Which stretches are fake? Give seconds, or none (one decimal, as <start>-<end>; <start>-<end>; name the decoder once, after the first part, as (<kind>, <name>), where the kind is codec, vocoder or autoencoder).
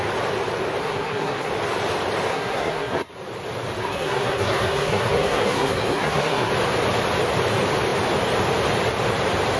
0.8-1.5 (codec, SNAC); 2.3-3.1; 3.8-6.5